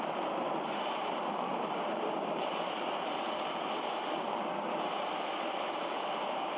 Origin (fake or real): fake